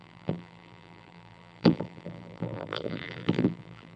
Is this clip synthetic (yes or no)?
yes